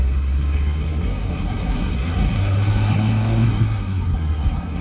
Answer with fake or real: fake